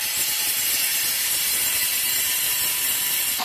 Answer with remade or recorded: remade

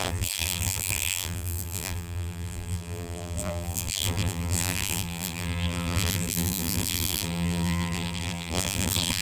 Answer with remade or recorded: remade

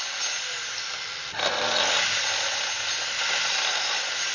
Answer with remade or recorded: remade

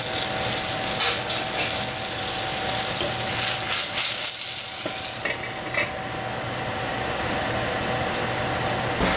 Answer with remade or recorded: recorded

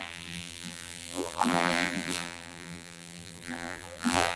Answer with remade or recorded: remade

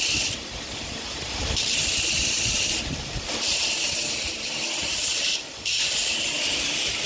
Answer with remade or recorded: remade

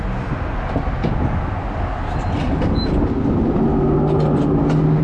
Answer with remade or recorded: recorded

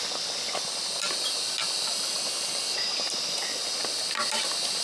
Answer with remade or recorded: recorded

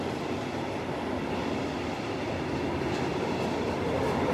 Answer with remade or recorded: recorded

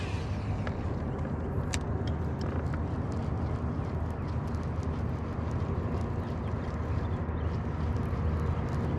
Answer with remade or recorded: recorded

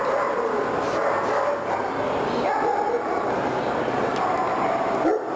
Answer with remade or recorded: recorded